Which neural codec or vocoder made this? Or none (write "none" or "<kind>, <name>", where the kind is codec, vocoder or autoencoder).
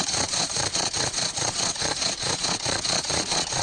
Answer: vocoder, Vocos